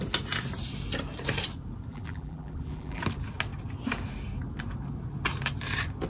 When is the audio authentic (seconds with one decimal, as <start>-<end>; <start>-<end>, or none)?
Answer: 0.0-1.9; 3.0-6.1